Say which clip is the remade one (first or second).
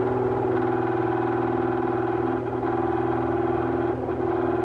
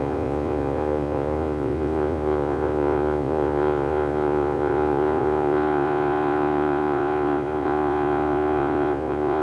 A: second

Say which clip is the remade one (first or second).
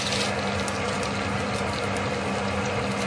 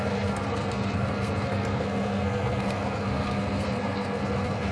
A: second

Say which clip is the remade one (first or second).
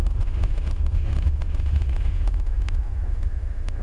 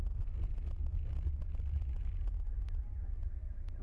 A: first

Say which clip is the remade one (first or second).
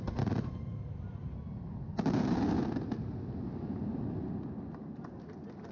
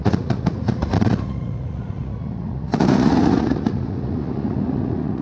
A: second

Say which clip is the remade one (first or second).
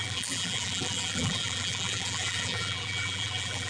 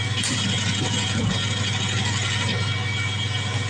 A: first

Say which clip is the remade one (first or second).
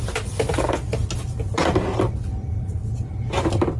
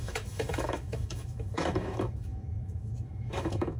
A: second